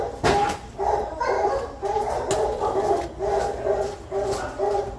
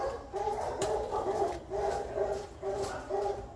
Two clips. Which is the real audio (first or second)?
first